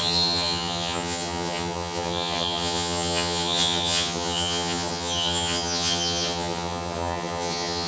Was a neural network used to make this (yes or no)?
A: yes